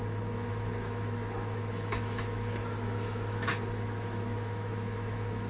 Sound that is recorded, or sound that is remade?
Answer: remade